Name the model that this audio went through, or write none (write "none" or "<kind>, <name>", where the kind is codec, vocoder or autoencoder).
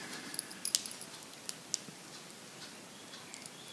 none